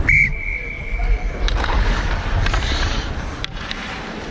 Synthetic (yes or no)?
yes